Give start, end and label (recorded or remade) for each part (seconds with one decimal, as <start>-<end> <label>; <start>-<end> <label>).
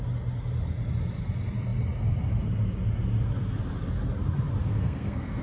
0.0-4.6 recorded; 4.6-5.4 remade